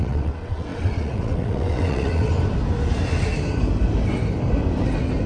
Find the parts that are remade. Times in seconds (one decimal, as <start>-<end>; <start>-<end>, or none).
0.0-2.3